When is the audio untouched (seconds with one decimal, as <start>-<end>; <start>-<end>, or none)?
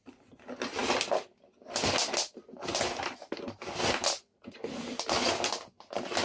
0.0-6.2